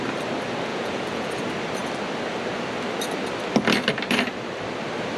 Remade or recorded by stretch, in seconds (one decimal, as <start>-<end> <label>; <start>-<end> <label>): 0.0-0.7 recorded; 0.7-1.4 remade; 1.4-5.2 recorded